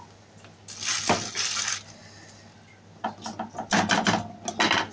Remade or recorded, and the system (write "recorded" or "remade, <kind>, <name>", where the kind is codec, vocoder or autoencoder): recorded